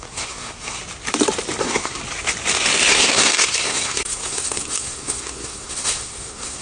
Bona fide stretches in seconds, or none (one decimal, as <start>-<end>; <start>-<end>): 0.8-1.6; 2.0-2.9